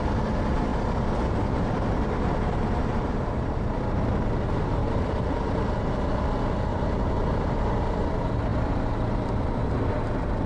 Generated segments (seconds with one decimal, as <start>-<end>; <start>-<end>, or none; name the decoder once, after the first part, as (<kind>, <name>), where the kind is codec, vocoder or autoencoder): 0.7-3.3 (vocoder, BigVGAN v2); 4.8-5.7; 6.7-7.7